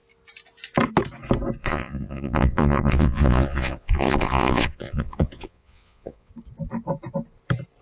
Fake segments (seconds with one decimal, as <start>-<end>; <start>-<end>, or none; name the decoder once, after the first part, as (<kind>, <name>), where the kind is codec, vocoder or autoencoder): 1.6-6.3 (vocoder, Vocos)